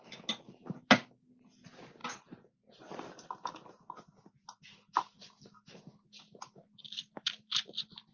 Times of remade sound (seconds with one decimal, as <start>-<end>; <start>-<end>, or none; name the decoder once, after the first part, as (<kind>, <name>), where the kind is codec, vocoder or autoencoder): none